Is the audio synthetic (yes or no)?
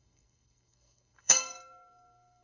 yes